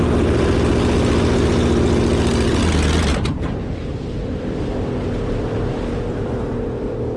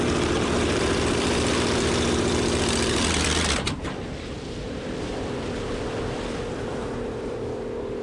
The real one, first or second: first